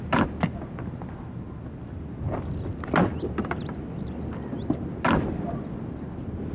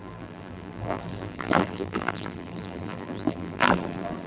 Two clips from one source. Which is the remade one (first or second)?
second